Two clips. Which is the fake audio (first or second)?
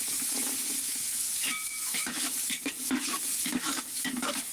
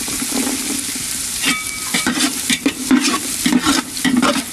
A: first